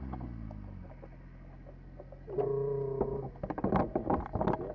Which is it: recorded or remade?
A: recorded